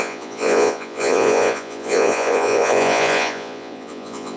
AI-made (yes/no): yes